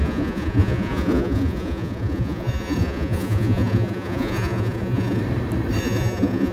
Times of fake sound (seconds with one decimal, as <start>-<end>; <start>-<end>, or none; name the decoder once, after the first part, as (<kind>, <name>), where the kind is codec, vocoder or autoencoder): 0.0-5.2 (vocoder, Vocos); 5.8-6.5